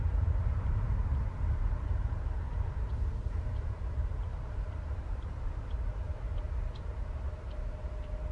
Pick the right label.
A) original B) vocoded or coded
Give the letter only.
B